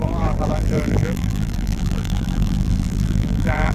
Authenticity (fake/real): fake